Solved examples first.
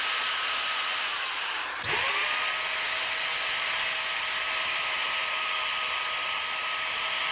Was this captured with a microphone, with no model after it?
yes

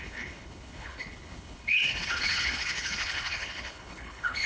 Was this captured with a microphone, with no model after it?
no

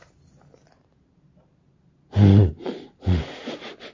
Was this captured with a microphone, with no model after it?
yes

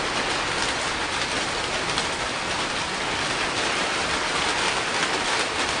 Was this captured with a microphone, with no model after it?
yes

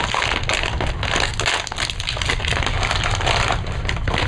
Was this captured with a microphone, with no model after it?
yes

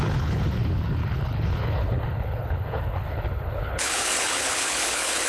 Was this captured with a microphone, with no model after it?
no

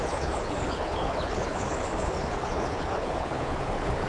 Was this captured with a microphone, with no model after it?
no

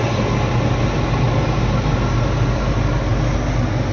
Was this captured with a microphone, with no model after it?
yes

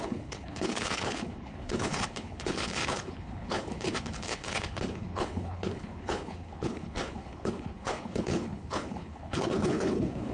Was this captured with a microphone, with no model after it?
no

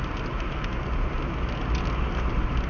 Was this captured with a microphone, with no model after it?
yes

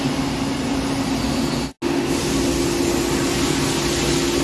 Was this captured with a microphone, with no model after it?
yes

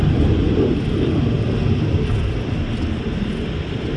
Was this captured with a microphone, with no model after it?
yes